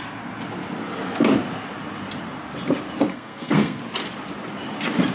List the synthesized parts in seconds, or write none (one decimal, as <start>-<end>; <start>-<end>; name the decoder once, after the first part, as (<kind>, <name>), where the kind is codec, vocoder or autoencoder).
3.1-3.8 (codec, SNAC)

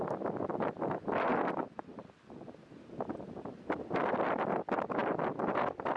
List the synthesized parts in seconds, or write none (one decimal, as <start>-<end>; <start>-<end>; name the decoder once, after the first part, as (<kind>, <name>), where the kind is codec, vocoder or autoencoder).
none

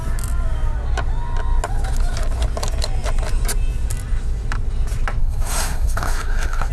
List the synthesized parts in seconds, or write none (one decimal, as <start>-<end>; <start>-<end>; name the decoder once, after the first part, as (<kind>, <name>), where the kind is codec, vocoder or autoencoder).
5.2-6.7 (codec, SNAC)

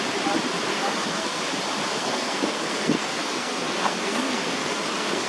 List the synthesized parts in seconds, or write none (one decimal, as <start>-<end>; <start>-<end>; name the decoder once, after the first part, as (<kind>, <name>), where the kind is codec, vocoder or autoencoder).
0.7-1.4 (codec, SNAC); 1.9-5.3

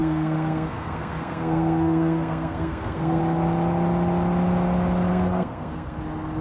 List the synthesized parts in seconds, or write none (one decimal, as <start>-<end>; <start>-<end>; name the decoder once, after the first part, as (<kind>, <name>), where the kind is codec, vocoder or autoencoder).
0.0-3.2 (codec, SNAC); 5.1-6.0

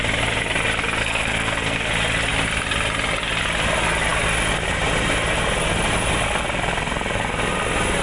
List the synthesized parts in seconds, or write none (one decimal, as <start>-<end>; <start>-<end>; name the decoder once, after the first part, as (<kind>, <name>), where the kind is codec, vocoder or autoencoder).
1.0-1.9 (codec, SNAC)